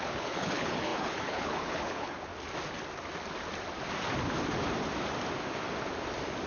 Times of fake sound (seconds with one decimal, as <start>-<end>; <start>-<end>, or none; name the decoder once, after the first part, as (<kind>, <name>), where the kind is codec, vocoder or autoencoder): 0.0-2.3 (codec, HILCodec)